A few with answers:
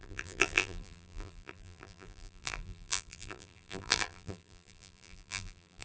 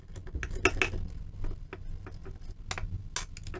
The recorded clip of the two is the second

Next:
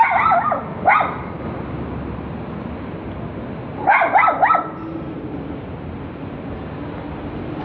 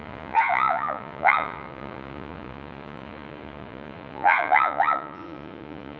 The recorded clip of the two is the first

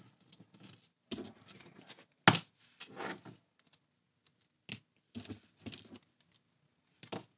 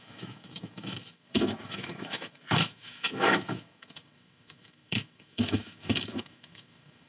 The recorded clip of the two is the first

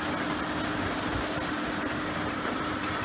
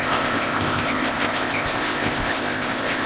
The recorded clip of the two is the first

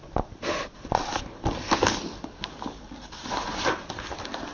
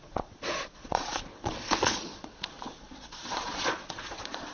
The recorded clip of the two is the first